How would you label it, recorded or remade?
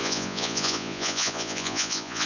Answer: remade